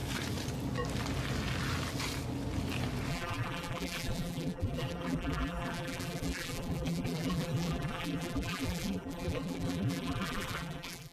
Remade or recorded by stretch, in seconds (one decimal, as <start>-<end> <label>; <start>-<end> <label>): 0.0-3.1 recorded; 3.1-11.1 remade